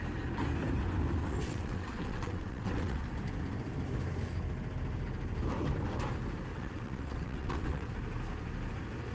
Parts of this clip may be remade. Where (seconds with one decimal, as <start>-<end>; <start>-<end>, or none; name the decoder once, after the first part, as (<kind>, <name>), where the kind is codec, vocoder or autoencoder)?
1.2-3.0 (vocoder, WaveNeXt); 6.5-7.9